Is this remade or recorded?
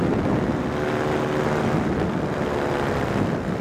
recorded